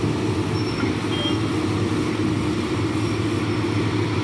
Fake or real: real